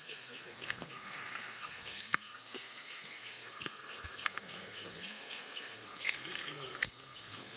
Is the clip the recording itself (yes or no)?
no